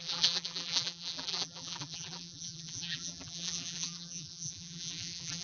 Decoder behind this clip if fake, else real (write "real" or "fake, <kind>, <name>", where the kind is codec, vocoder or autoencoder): fake, vocoder, BigVGAN v2